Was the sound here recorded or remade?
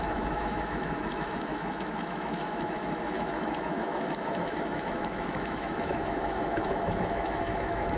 remade